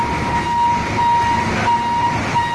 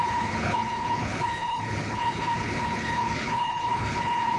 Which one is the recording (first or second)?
first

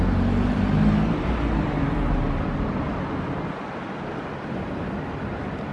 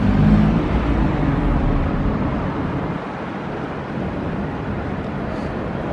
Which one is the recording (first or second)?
first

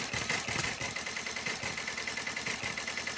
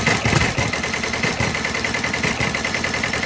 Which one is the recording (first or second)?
first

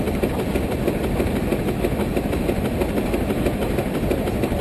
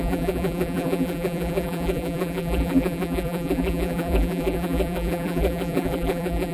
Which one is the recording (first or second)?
first